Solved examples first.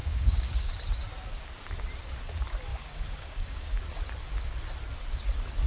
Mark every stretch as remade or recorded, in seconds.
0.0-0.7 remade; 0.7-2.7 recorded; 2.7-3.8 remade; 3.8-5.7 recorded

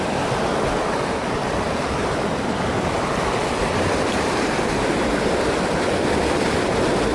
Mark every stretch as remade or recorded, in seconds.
0.0-1.4 recorded; 1.4-3.0 remade; 3.0-7.1 recorded

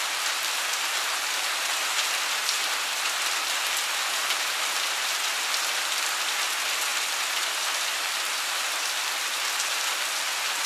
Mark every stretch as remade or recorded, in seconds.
0.0-4.2 recorded; 4.2-5.0 remade; 5.0-6.9 recorded; 6.9-7.6 remade; 7.6-10.7 recorded

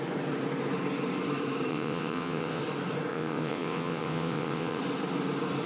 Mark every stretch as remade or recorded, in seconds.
0.0-1.7 recorded; 1.7-2.6 remade; 2.6-3.1 recorded; 3.1-4.8 remade; 4.8-5.7 recorded

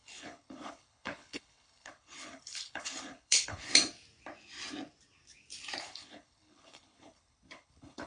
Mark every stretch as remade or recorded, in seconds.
0.0-3.7 remade; 3.7-5.8 recorded; 5.8-8.1 remade